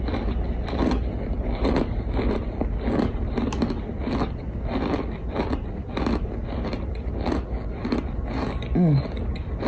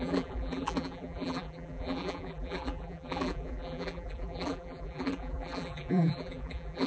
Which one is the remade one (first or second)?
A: second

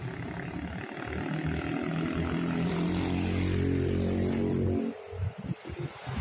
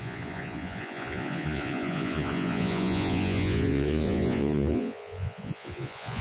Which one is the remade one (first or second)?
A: second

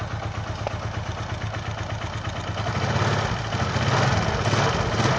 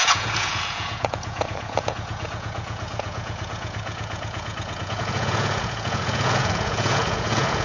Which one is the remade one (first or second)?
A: second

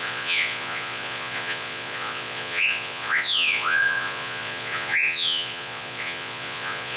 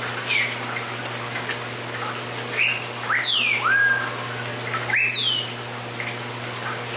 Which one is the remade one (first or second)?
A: first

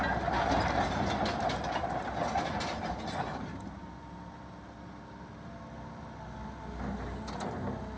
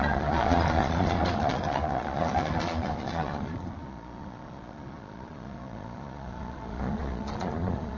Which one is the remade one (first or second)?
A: second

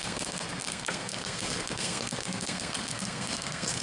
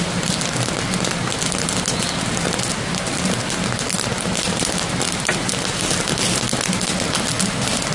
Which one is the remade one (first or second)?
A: first